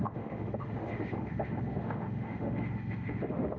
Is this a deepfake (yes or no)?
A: yes